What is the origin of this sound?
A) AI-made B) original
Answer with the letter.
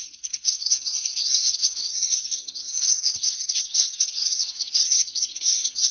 A